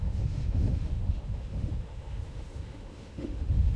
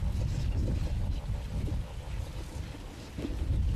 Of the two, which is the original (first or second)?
second